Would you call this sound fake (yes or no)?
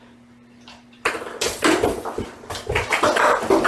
yes